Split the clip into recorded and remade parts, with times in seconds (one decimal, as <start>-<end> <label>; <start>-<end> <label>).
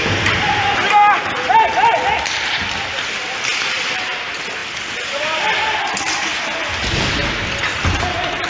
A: 0.0-8.5 recorded